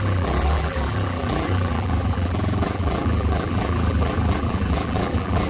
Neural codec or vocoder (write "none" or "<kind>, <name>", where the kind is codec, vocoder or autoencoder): vocoder, BigVGAN v2